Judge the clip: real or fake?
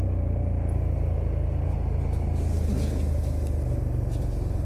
real